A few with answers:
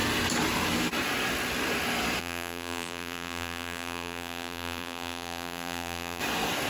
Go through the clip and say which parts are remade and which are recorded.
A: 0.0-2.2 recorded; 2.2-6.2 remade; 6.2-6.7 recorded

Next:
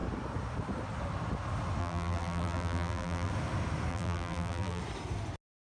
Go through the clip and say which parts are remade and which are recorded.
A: 0.0-1.8 recorded; 1.8-3.3 remade; 3.3-3.9 recorded; 3.9-4.8 remade; 4.8-5.7 recorded